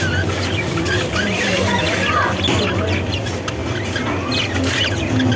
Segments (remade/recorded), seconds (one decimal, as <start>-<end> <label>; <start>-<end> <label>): 0.0-5.4 recorded